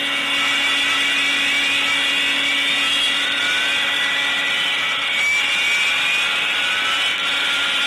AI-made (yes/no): no